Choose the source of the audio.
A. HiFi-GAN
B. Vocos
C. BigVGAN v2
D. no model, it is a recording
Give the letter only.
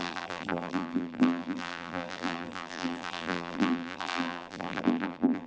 C